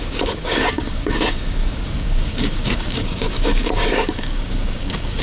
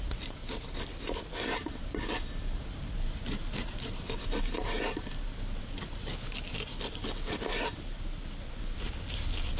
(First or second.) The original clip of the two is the second